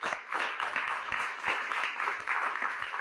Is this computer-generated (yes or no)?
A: yes